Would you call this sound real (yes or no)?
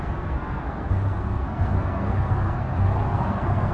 no